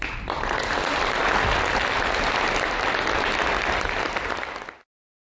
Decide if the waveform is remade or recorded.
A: remade